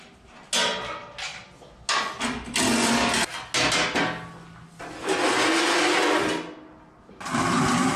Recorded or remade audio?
recorded